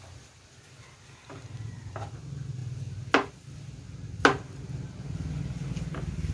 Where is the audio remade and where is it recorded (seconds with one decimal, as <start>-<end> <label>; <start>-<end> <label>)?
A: 0.0-6.3 recorded